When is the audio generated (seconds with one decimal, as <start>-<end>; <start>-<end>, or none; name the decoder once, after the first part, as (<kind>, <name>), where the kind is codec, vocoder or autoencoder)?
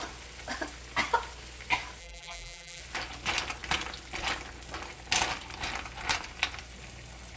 2.0-2.8 (vocoder, BigVGAN v2)